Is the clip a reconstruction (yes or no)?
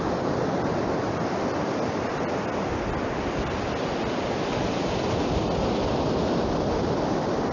no